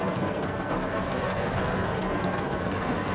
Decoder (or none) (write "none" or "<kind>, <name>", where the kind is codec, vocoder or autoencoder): codec, SNAC